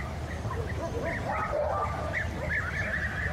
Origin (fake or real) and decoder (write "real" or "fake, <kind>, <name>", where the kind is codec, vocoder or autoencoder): real